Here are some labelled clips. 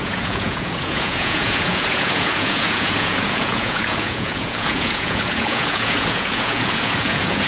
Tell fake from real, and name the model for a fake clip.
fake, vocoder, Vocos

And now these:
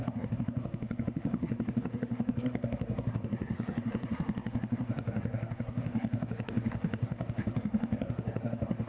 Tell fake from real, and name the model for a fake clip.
fake, codec, SNAC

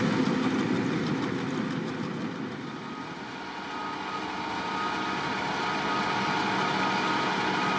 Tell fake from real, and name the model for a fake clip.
real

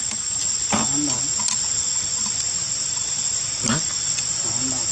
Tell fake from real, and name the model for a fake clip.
real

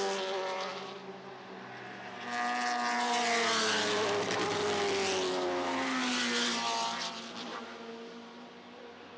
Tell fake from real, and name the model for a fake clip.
real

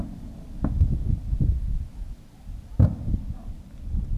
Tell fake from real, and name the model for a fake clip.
real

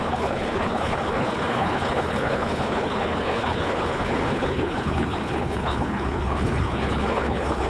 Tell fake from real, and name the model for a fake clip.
fake, codec, HILCodec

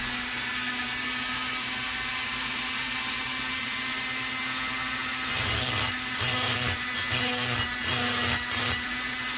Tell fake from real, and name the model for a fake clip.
real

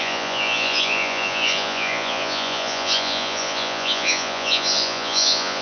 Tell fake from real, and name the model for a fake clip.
fake, vocoder, Vocos